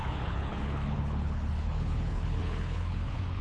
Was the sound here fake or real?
fake